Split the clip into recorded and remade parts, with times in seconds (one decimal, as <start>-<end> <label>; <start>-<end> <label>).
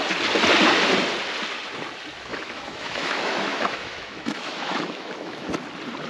0.0-2.3 recorded; 2.3-5.5 remade; 5.5-6.1 recorded